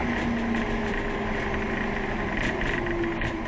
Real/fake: real